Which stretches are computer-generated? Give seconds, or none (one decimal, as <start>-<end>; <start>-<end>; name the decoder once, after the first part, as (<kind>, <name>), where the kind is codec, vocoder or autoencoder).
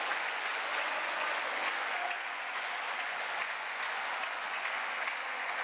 0.0-5.6 (vocoder, Vocos)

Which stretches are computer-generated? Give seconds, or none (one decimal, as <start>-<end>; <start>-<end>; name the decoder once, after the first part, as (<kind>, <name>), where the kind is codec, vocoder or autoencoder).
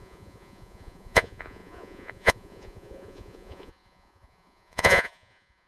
0.0-5.7 (vocoder, Vocos)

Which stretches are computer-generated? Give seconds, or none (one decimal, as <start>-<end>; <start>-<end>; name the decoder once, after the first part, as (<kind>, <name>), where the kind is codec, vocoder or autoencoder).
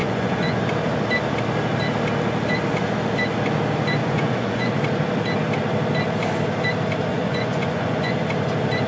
0.0-0.6 (vocoder, Vocos); 4.0-4.7; 7.1-8.1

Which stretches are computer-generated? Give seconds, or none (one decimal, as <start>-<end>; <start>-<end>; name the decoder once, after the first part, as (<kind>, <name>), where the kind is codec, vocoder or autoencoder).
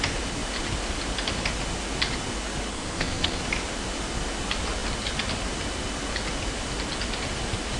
2.7-3.4 (codec, SNAC)